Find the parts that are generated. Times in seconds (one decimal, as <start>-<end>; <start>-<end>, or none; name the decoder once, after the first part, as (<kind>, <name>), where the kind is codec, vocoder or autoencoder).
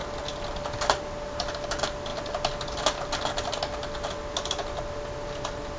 none